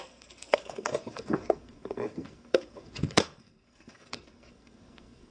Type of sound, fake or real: fake